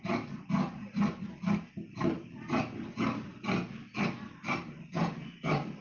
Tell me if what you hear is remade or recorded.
recorded